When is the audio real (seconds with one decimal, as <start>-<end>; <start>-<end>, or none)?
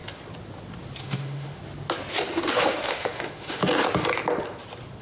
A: 0.0-1.0; 1.6-2.5; 3.6-5.0